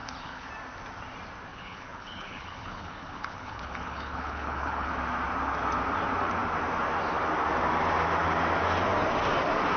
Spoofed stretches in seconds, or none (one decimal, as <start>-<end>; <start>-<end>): 0.0-0.5; 1.5-4.9